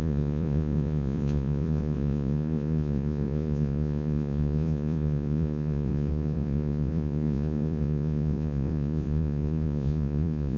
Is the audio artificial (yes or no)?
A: yes